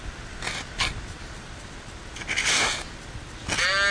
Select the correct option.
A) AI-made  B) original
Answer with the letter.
B